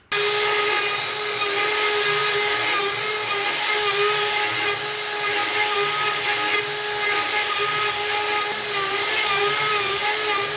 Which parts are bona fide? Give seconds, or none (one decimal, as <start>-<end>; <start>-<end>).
0.0-10.6